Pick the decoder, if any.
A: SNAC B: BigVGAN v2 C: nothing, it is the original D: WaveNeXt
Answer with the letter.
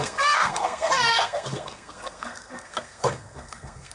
A